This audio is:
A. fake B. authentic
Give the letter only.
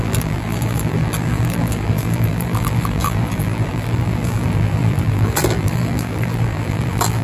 A